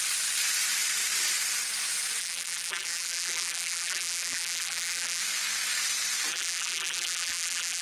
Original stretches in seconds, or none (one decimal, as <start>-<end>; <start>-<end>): 0.0-2.2; 5.2-6.3